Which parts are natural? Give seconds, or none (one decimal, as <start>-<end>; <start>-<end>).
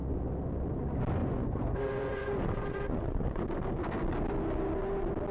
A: 0.0-1.2; 3.4-5.3